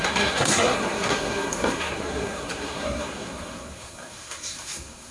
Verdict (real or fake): fake